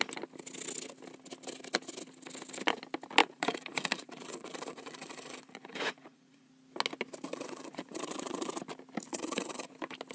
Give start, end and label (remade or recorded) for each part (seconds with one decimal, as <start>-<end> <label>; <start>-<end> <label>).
0.0-3.2 recorded; 3.2-6.5 remade; 6.5-7.3 recorded; 7.3-8.5 remade; 8.5-9.1 recorded; 9.1-9.7 remade; 9.7-10.1 recorded